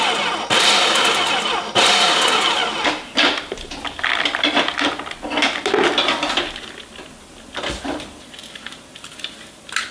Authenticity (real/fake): real